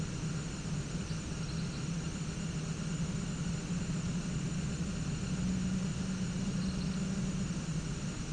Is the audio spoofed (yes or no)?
no